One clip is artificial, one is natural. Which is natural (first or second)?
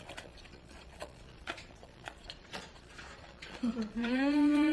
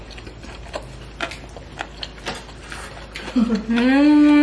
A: second